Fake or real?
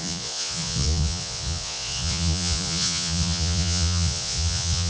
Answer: fake